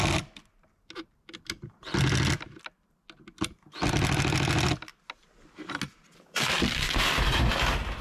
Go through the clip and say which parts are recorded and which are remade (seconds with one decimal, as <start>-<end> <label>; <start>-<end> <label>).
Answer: 0.0-8.0 recorded